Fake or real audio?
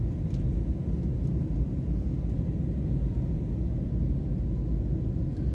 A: real